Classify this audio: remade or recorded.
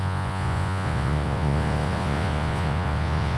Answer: remade